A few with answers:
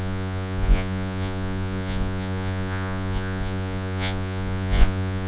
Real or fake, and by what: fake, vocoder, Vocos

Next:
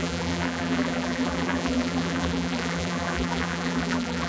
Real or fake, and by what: fake, vocoder, BigVGAN v2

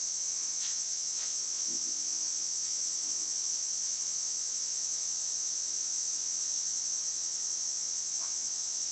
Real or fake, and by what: fake, vocoder, Vocos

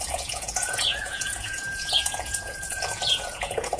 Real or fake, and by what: fake, vocoder, Vocos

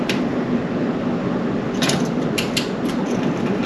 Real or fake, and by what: real